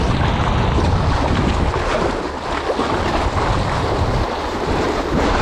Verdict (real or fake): real